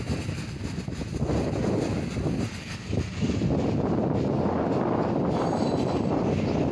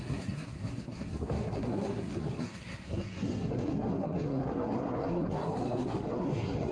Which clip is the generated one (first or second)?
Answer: second